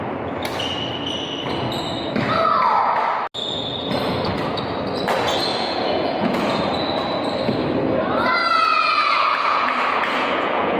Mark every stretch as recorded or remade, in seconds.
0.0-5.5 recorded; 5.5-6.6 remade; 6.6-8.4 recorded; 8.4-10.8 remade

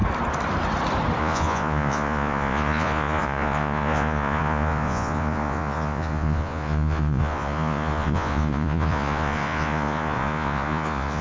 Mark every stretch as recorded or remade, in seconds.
0.0-1.2 recorded; 1.2-11.2 remade

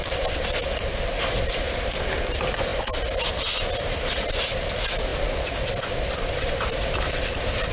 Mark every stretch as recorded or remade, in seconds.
0.0-7.7 recorded